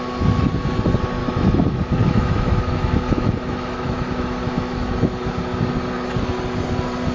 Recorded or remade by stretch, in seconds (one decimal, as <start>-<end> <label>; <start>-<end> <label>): 0.0-1.2 recorded; 1.2-5.3 remade; 5.3-7.1 recorded